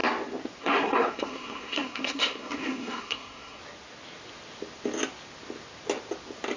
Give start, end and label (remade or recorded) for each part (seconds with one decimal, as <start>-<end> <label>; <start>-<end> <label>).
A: 0.0-0.6 recorded; 0.6-3.6 remade; 3.6-6.6 recorded